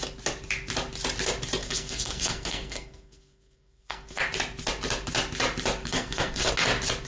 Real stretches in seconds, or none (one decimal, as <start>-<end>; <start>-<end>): 0.0-1.6; 4.2-5.8; 6.5-7.1